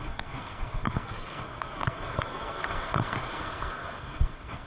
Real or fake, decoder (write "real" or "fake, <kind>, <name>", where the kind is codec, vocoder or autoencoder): fake, codec, SNAC